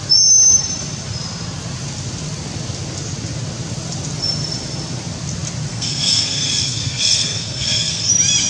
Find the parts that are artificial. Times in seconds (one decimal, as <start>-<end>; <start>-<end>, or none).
5.7-8.1

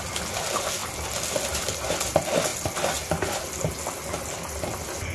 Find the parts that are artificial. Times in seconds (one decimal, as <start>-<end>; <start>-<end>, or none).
none

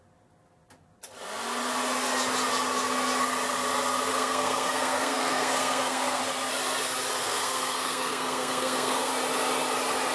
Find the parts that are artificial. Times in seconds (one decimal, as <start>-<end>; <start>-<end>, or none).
4.1-6.2; 7.2-9.1

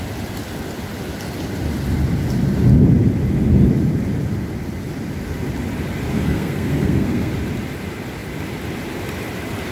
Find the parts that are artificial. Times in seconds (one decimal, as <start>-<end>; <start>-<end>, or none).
6.1-7.3

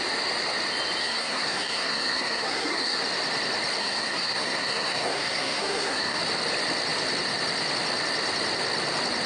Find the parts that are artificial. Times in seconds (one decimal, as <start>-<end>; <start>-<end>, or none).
1.0-3.0; 3.8-6.2